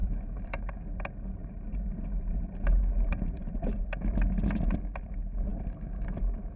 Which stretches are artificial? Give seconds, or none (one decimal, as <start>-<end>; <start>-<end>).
0.0-0.7; 1.4-3.8